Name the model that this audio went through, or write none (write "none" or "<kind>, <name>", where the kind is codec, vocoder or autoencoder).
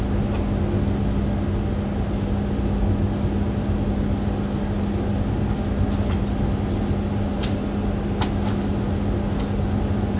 none